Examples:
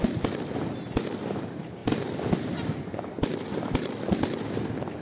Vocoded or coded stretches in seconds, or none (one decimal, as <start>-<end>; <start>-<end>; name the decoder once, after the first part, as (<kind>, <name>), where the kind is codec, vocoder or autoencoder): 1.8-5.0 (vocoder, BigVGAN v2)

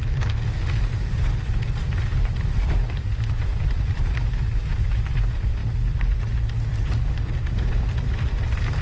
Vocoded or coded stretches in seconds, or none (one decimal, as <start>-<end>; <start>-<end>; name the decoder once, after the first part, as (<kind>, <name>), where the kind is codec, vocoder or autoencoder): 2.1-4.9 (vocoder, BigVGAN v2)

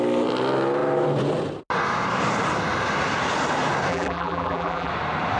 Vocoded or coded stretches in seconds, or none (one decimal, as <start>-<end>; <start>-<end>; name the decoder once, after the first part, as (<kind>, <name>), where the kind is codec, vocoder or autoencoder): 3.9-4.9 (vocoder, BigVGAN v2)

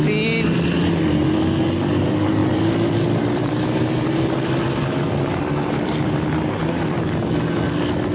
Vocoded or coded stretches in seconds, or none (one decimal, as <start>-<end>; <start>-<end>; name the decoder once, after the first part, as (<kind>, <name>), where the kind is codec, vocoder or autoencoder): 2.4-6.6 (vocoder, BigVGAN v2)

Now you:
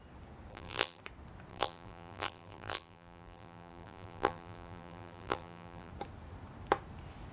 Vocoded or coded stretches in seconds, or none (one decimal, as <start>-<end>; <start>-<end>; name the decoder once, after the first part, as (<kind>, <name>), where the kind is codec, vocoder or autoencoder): 0.5-1.0 (vocoder, BigVGAN v2); 1.5-5.9

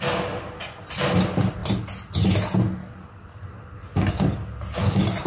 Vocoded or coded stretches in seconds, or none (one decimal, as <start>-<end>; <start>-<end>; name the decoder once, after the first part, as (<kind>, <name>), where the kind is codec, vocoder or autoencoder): none

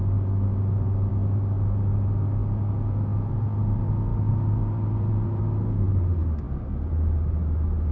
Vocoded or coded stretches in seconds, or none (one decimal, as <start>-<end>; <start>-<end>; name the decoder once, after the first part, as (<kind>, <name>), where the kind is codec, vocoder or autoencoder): none